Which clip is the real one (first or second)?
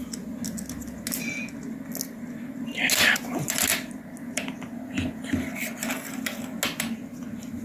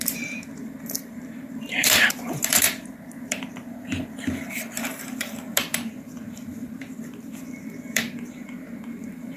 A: first